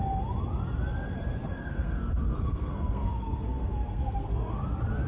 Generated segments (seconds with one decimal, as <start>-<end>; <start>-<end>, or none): 1.4-4.5